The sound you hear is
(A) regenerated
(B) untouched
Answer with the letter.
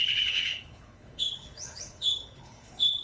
A